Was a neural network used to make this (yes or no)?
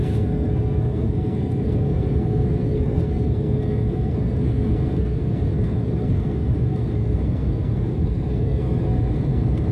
yes